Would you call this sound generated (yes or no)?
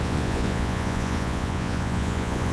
yes